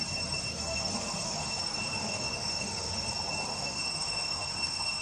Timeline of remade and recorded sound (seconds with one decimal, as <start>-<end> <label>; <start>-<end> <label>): 0.0-0.5 recorded; 0.5-1.5 remade; 1.5-1.9 recorded; 1.9-3.1 remade; 3.1-3.5 recorded; 3.5-5.0 remade